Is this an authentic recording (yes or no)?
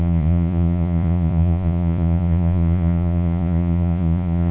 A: no